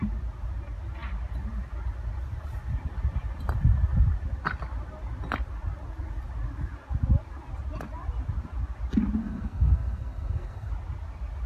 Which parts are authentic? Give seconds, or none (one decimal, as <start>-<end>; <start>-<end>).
0.0-9.2; 10.7-11.5